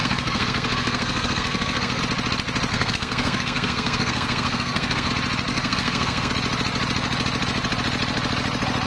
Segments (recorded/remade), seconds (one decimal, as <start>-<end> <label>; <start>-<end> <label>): 0.0-2.0 remade; 2.0-2.7 recorded; 2.7-5.1 remade; 5.1-5.5 recorded; 5.5-6.3 remade; 6.3-8.9 recorded